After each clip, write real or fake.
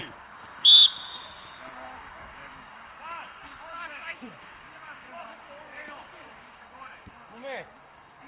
fake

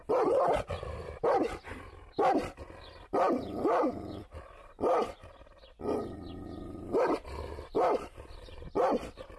real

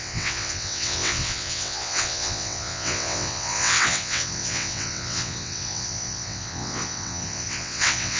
fake